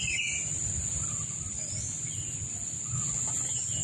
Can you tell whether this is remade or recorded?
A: recorded